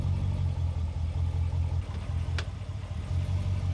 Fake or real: real